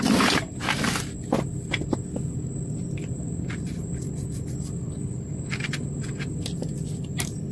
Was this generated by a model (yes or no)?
no